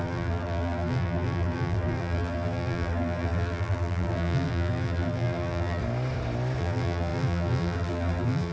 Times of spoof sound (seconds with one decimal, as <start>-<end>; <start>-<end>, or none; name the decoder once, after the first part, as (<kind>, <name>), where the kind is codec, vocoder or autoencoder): 0.0-5.8 (vocoder, BigVGAN v2); 6.6-8.5